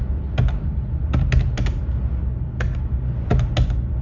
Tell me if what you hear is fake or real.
real